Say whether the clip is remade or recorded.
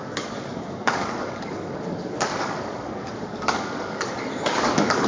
remade